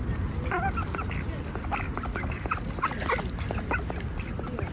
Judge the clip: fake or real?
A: real